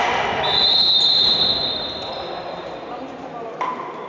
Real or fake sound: real